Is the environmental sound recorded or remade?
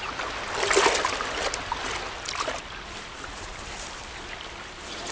recorded